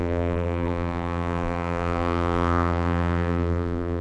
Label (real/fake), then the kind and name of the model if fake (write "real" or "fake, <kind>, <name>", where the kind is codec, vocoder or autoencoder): fake, vocoder, BigVGAN v2